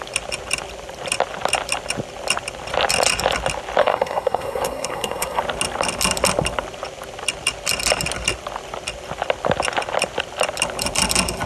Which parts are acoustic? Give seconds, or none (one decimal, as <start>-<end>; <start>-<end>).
0.0-3.8; 5.4-11.5